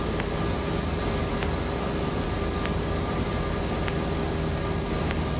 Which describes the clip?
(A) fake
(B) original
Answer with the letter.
B